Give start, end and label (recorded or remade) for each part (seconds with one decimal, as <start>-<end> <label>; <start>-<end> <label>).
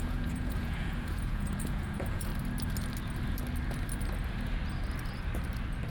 0.0-2.3 remade; 2.3-5.9 recorded